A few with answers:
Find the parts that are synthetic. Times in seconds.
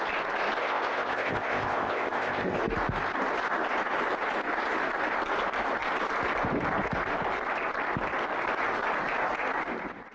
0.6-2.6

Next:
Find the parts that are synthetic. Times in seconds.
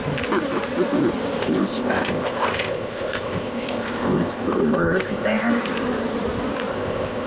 1.4-5.5; 6.7-7.3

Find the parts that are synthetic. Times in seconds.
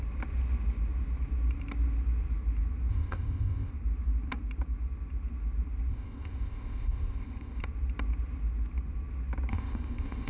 2.9-3.7; 5.9-7.6; 9.5-10.3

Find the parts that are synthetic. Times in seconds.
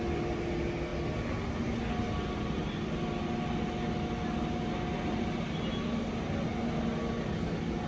none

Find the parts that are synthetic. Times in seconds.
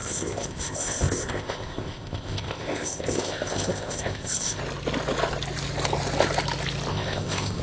0.0-4.6; 6.9-7.6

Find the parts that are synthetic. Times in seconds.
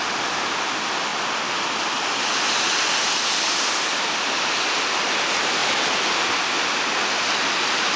none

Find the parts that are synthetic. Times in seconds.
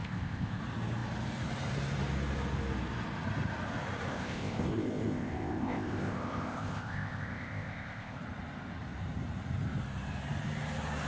0.0-0.6; 4.1-8.2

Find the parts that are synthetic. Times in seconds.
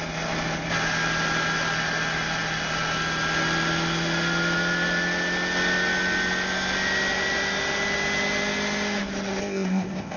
9.4-10.2